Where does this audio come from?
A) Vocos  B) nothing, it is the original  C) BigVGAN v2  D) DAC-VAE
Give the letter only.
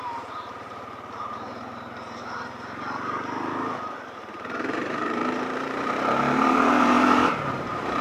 C